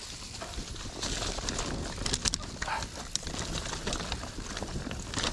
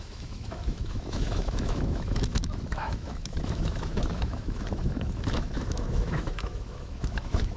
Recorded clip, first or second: first